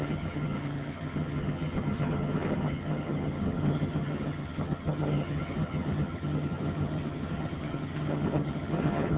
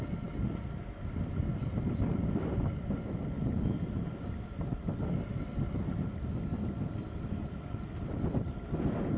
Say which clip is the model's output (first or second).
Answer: first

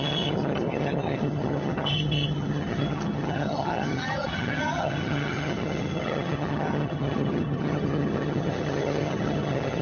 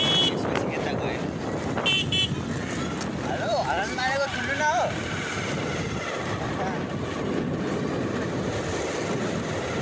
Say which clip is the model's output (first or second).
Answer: first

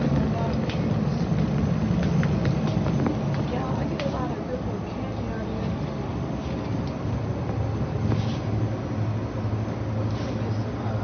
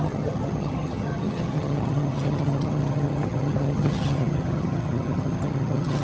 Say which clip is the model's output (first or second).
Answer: second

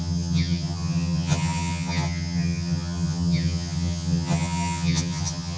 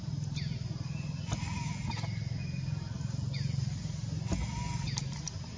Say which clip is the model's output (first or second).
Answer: first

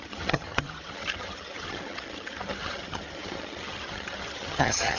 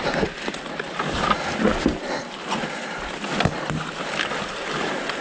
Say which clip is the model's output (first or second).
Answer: first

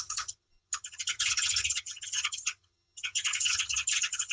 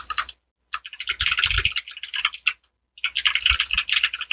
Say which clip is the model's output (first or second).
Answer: first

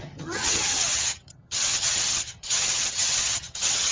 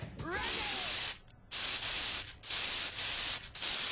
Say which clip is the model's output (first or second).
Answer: first